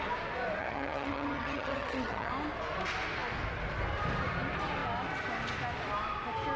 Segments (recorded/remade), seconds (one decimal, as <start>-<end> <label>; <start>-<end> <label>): 0.0-0.6 recorded; 0.6-2.3 remade; 2.3-6.6 recorded